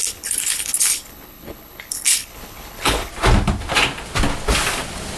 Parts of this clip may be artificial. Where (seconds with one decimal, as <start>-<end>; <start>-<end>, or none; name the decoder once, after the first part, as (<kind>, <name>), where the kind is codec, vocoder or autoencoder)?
0.0-3.1 (codec, HILCodec)